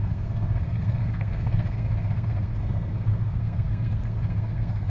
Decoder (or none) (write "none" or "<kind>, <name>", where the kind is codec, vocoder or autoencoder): codec, SNAC